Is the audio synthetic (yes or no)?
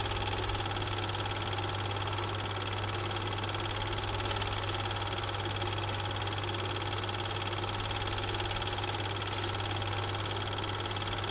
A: no